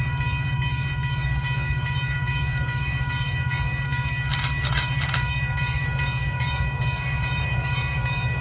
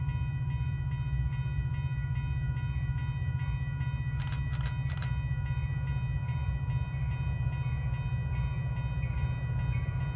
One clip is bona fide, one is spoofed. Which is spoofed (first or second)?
first